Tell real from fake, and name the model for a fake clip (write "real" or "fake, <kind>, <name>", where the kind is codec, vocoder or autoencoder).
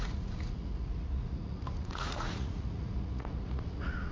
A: fake, vocoder, Vocos